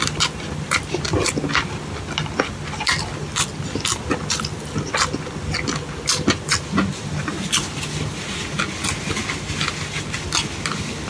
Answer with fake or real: real